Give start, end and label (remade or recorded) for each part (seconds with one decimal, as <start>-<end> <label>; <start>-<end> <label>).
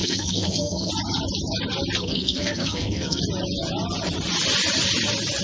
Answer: 0.0-0.9 remade; 0.9-2.0 recorded; 2.0-3.2 remade; 3.2-5.4 recorded